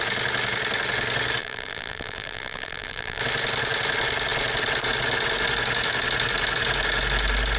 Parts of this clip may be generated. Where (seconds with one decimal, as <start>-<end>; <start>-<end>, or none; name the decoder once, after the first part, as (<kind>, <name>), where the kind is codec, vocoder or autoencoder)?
1.4-3.2 (vocoder, BigVGAN v2)